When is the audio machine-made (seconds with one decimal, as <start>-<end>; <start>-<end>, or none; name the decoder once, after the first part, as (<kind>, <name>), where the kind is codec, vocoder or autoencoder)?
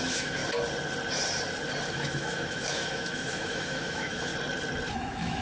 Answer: 0.0-0.4 (autoencoder, DAC-VAE); 1.9-4.3; 4.9-5.4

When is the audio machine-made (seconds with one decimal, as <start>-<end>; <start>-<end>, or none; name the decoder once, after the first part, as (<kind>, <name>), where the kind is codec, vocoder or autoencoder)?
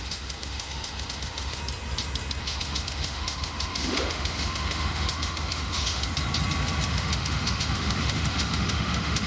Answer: 0.0-1.6 (autoencoder, DAC-VAE); 2.4-6.0; 6.9-9.3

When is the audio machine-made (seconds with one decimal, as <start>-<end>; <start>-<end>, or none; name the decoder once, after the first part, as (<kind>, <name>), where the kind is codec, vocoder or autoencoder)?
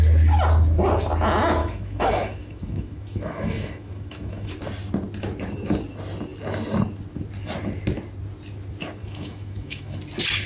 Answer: 1.6-4.5 (autoencoder, DAC-VAE); 9.0-10.0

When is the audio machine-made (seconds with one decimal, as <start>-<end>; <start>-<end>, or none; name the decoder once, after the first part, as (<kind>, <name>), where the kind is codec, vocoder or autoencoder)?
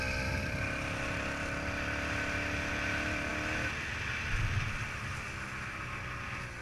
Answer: none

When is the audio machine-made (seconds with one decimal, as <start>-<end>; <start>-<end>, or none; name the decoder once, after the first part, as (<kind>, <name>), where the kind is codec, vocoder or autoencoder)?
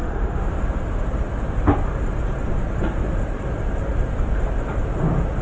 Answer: 0.0-0.5 (autoencoder, DAC-VAE)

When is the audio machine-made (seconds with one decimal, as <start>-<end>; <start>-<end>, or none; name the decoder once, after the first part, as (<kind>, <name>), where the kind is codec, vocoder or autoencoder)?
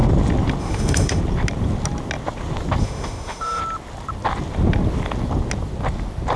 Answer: 0.6-1.2 (autoencoder, DAC-VAE); 2.8-3.6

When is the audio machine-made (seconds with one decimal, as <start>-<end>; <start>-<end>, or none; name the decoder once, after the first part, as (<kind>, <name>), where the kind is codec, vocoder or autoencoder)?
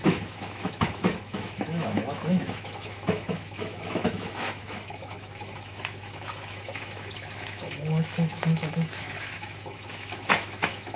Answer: 0.0-11.0 (autoencoder, DAC-VAE)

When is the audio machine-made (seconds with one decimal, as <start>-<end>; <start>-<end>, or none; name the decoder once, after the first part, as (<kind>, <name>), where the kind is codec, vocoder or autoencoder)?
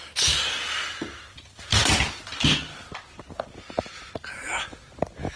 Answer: none